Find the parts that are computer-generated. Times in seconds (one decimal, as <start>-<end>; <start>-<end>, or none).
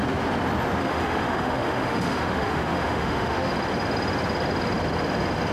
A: 0.8-3.5